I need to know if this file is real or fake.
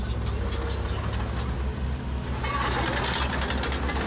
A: real